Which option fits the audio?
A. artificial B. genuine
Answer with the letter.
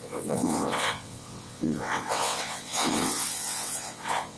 A